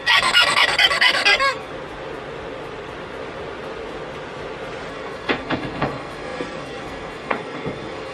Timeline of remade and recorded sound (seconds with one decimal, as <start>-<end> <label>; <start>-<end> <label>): 0.0-1.7 remade; 1.7-4.9 recorded; 4.9-8.1 remade